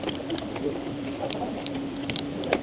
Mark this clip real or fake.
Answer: real